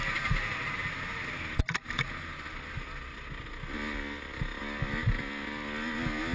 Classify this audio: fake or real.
real